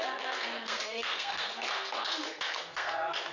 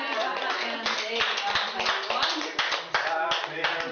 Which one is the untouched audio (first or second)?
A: second